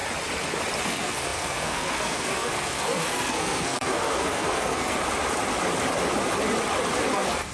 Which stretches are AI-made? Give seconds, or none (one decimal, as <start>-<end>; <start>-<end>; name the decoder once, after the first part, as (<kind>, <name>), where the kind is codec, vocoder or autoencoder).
0.8-5.0 (codec, SNAC); 7.1-7.5